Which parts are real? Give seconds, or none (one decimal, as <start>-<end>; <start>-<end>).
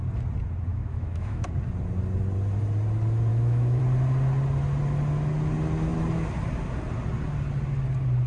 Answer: 0.0-0.7; 1.5-3.3; 3.8-8.3